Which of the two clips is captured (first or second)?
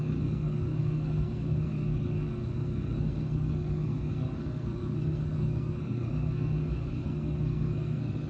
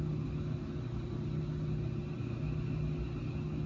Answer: second